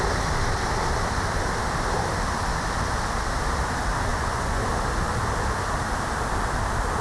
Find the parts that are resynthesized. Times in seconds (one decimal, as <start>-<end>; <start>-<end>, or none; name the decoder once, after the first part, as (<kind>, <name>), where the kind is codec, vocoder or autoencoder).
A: 4.1-4.6 (vocoder, Vocos)